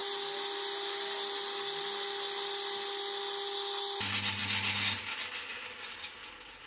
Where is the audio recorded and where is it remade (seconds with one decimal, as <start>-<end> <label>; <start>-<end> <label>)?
0.0-6.7 recorded